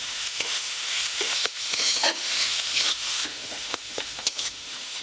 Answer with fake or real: fake